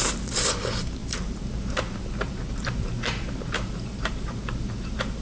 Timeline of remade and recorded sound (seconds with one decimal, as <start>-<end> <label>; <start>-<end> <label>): 0.0-5.2 remade